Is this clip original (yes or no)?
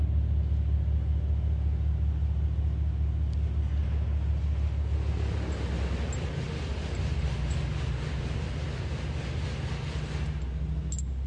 yes